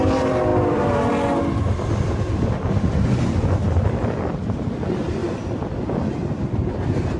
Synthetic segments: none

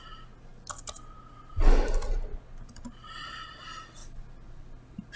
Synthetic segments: none

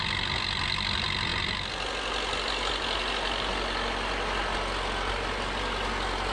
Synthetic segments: none

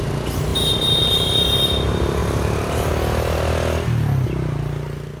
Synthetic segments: 0.5-1.8; 2.2-2.9

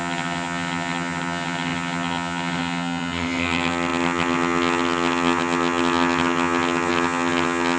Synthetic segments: 0.0-7.8

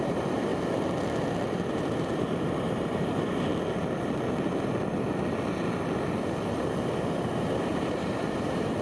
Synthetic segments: 0.0-0.5; 1.7-3.5; 6.7-8.8